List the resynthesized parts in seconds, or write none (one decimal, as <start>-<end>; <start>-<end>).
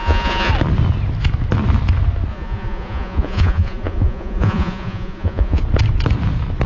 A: 0.0-0.5; 2.3-5.6